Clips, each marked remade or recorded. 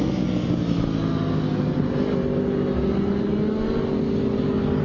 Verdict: recorded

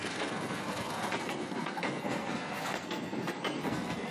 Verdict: remade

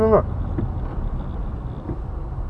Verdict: recorded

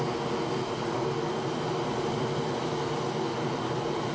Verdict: recorded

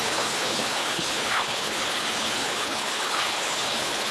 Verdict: remade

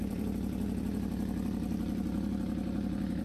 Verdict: remade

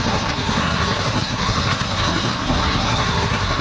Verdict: remade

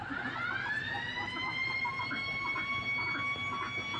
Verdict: recorded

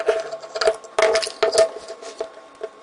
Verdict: recorded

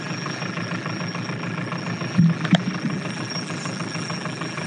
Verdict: recorded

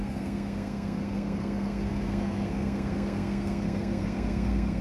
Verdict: remade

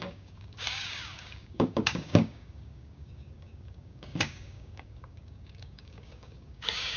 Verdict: remade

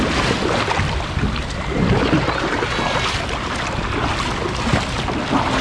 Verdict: recorded